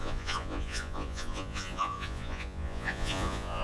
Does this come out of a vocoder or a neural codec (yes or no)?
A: yes